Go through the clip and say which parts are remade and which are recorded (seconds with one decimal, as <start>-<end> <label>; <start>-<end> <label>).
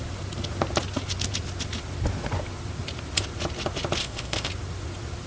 0.0-4.0 recorded; 4.0-4.5 remade; 4.5-5.3 recorded